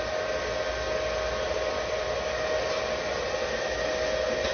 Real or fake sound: real